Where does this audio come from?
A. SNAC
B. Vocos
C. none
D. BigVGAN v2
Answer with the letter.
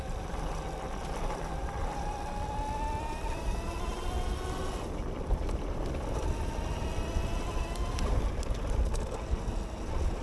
C